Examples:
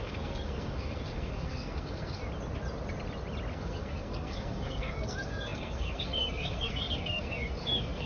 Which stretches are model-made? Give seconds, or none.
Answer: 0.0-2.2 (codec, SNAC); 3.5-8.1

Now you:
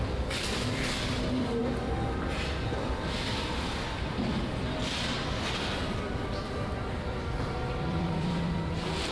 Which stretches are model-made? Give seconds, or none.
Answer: 0.0-1.6 (vocoder, BigVGAN v2); 2.7-9.1

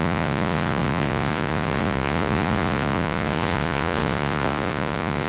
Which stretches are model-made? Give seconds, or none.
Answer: 0.0-5.3 (vocoder, Vocos)

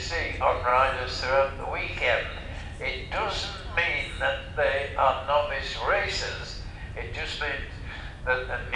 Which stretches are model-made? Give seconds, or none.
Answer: 5.4-6.5 (autoencoder, DAC-VAE)